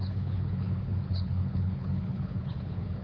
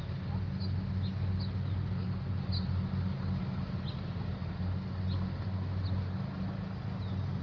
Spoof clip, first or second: first